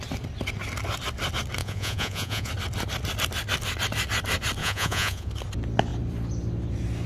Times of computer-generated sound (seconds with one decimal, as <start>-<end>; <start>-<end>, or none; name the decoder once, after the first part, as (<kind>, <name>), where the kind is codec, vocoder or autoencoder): 1.6-2.5 (vocoder, Vocos); 4.6-5.3